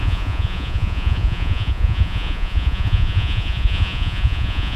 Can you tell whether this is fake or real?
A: fake